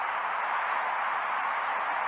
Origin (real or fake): real